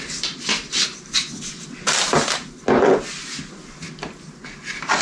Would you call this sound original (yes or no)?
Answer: yes